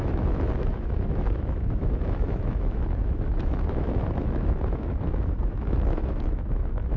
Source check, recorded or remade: remade